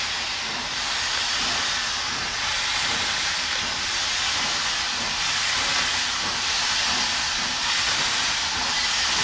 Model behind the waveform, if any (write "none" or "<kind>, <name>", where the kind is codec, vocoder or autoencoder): none